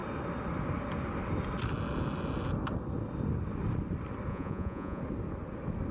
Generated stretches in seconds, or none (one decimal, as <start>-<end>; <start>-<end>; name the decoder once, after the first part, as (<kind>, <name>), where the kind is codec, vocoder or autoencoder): 4.3-5.0 (vocoder, Vocos)